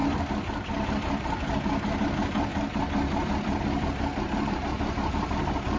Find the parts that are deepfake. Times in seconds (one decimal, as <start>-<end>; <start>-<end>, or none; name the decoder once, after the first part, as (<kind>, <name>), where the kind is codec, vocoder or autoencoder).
2.0-2.5 (vocoder, BigVGAN v2); 4.2-5.8